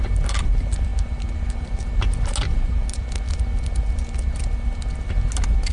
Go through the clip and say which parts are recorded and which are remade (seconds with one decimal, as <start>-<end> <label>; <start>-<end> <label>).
0.0-5.7 recorded